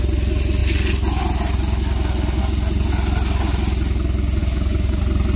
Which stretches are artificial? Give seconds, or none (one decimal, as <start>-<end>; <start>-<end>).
4.4-5.0